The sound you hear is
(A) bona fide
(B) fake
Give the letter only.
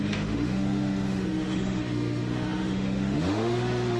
B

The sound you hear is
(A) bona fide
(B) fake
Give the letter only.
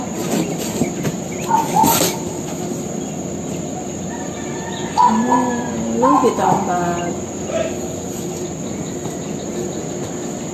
A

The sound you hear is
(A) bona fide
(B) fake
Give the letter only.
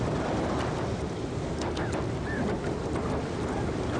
A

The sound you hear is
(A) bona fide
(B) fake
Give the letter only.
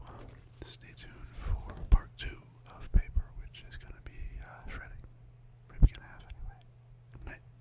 A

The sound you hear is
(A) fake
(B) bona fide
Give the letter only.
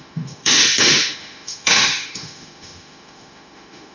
A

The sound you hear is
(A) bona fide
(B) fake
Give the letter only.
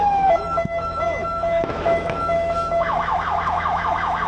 B